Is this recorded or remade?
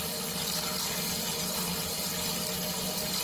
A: recorded